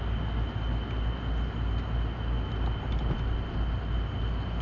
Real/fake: real